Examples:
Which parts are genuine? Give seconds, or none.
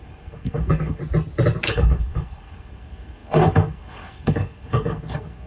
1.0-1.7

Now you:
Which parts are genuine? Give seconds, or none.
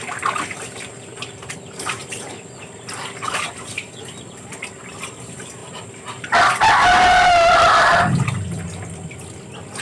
0.0-9.8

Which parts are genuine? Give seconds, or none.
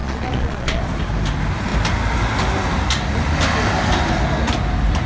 0.8-5.1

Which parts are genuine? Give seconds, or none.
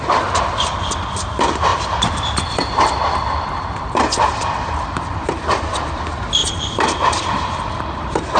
0.0-1.7; 6.0-6.4; 7.8-8.4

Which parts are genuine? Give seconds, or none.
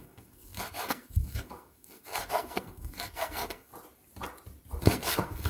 3.7-4.8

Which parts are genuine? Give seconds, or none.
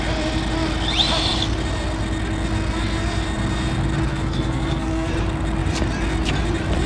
0.0-4.1; 5.1-6.9